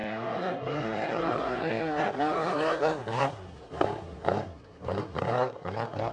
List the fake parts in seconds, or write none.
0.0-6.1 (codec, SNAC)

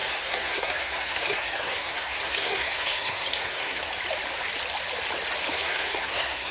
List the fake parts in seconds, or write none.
0.0-3.9 (codec, SNAC); 5.5-6.5

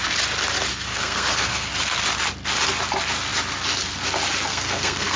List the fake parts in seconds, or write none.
0.7-1.7 (codec, SNAC); 4.5-5.2

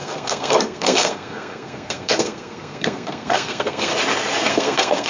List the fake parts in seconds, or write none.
0.0-3.9 (codec, SNAC); 4.5-5.1

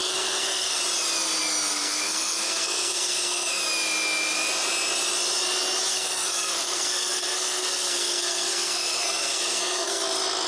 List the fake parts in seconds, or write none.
0.0-0.8 (codec, SNAC); 1.7-3.6; 5.9-10.0